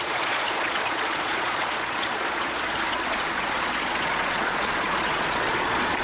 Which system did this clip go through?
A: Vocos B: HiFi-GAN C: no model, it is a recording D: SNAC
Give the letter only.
A